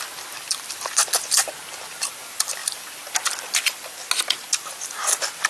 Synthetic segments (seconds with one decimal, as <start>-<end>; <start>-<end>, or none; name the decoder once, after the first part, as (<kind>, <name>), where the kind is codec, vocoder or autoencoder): none